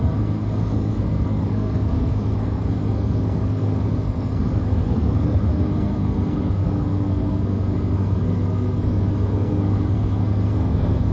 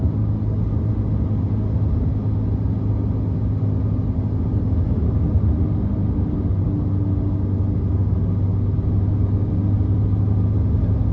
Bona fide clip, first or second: second